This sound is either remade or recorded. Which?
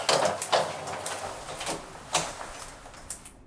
recorded